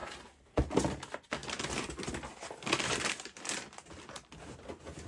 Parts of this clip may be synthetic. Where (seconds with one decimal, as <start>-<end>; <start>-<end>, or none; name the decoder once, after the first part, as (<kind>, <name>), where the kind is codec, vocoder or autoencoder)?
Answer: none